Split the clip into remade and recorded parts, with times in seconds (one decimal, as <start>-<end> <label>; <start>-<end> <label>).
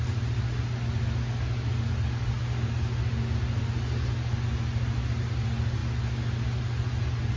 0.0-7.4 recorded